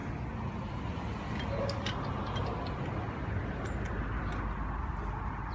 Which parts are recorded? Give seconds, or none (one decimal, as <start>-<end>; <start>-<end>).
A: 0.0-5.5